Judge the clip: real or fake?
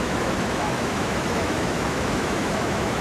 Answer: fake